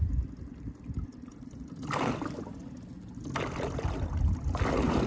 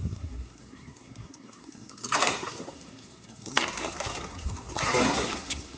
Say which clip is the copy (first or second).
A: second